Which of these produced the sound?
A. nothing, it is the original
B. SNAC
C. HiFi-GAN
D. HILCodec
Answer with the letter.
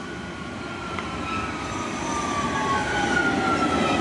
A